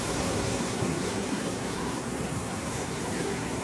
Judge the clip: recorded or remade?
remade